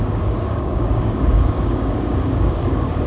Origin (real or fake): fake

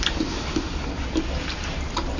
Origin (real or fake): real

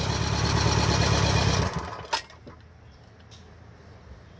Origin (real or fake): real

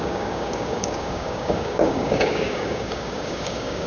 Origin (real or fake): fake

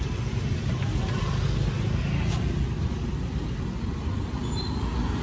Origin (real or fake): real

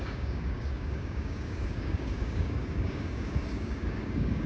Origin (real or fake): fake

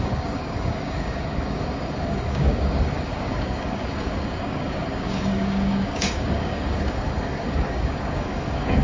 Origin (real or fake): fake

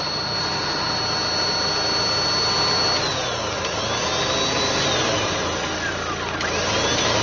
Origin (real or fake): real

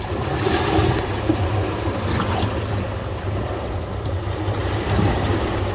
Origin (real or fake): real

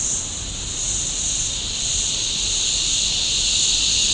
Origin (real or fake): real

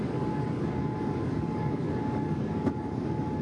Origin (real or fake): fake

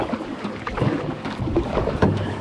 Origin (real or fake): fake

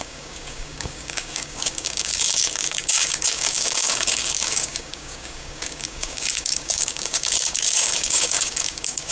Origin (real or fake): fake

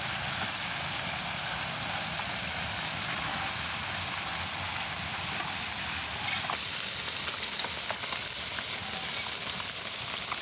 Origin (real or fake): real